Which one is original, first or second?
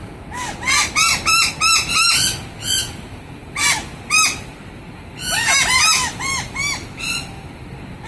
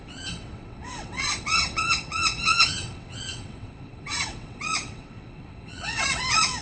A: first